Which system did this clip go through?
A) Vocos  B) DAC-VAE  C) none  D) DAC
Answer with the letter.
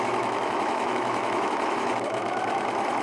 B